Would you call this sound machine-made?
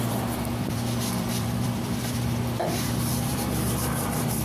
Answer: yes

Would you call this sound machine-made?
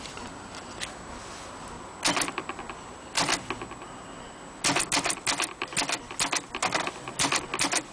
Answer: no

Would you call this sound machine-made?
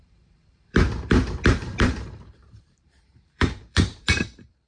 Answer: yes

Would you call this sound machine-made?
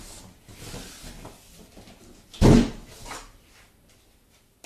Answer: no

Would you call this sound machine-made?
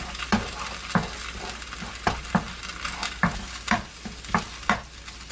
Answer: no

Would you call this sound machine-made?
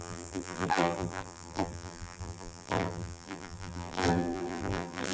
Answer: yes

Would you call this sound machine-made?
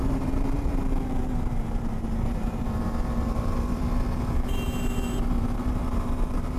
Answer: yes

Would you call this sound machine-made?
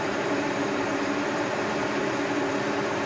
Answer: yes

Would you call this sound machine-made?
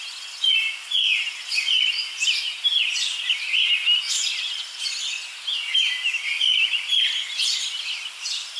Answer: no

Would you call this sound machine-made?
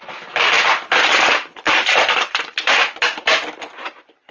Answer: yes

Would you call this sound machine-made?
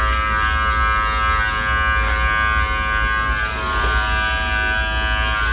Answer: no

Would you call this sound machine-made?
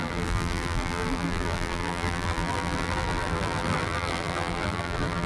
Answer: yes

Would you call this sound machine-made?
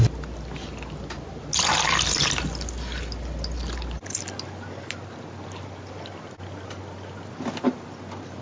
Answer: no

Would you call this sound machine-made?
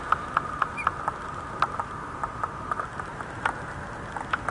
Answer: no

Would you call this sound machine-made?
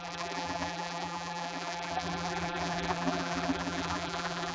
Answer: yes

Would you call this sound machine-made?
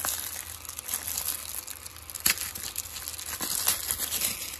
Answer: no